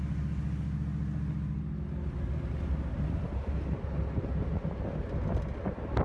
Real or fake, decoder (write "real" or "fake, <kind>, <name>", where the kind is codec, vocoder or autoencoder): real